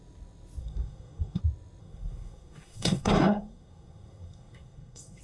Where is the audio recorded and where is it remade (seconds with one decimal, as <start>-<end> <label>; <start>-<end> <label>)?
0.0-0.6 recorded; 0.6-1.4 remade; 1.4-1.8 recorded; 1.8-5.2 remade